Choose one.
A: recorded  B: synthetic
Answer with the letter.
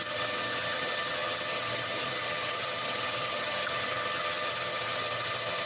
B